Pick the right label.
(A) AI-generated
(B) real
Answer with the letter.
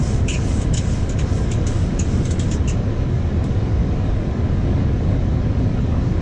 A